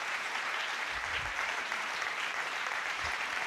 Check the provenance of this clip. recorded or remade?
remade